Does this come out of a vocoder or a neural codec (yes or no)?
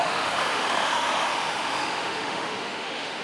yes